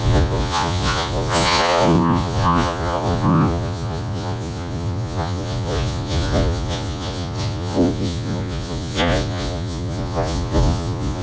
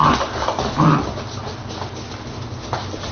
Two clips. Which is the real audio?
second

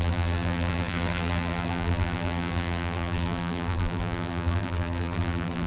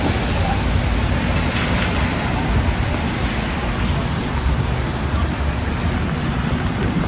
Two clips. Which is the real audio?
second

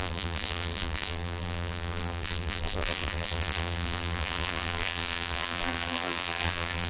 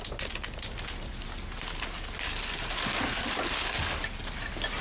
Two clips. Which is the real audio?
second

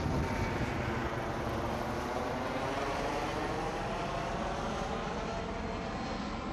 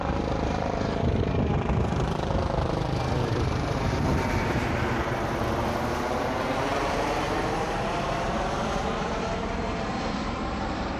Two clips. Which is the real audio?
first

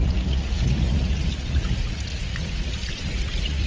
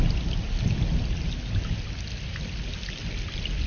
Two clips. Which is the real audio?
second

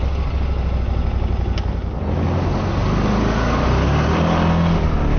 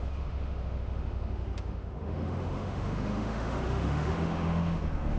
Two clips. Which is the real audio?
first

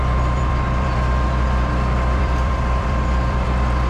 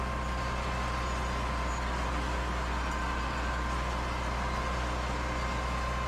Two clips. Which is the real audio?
second